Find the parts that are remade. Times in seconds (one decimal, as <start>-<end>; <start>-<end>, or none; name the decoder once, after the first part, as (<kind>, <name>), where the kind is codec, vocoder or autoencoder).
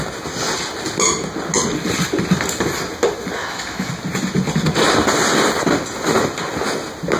3.4-3.9 (autoencoder, DAC-VAE)